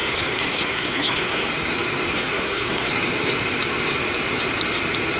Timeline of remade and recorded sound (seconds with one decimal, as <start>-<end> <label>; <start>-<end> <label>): 0.0-1.5 remade; 1.5-2.1 recorded; 2.1-2.9 remade; 2.9-5.2 recorded

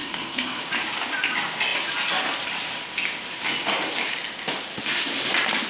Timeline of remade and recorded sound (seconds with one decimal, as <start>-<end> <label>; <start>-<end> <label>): 0.0-0.6 remade; 0.6-5.7 recorded

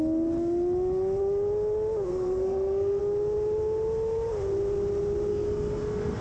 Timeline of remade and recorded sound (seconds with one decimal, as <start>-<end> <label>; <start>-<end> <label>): 0.0-2.1 recorded; 2.1-3.0 remade; 3.0-5.3 recorded; 5.3-6.2 remade

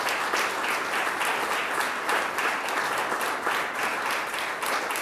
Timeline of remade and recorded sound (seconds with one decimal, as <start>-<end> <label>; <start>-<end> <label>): 0.0-5.0 recorded

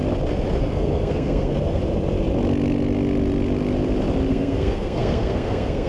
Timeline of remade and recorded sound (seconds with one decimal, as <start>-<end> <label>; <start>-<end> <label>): 0.0-0.6 recorded; 0.6-1.8 remade; 1.8-4.3 recorded; 4.3-5.9 remade

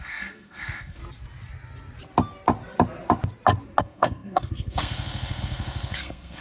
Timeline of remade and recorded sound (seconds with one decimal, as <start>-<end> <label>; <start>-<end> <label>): 0.0-1.0 remade; 1.0-3.8 recorded; 3.8-6.4 remade